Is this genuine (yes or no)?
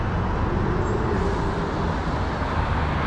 yes